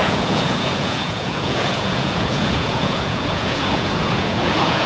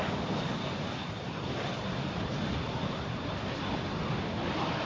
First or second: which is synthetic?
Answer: first